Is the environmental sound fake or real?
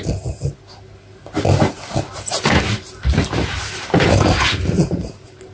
real